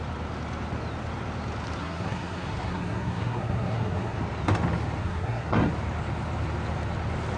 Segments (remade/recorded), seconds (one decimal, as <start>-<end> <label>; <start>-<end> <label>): 0.0-1.8 recorded; 1.8-4.2 remade; 4.2-5.0 recorded; 5.0-5.7 remade; 5.7-7.4 recorded